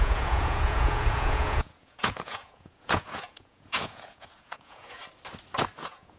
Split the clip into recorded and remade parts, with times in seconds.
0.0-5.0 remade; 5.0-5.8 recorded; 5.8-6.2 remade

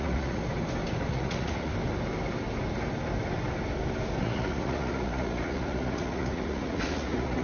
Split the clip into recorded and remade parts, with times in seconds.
0.0-0.4 remade; 0.4-1.1 recorded; 1.1-1.7 remade; 1.7-4.2 recorded; 4.2-7.4 remade